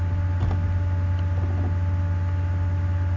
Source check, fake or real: real